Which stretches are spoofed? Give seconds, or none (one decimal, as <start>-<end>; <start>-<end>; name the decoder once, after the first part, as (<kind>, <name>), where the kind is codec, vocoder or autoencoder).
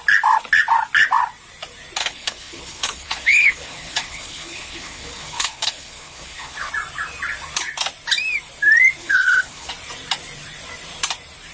2.0-6.7 (codec, HILCodec); 9.0-9.7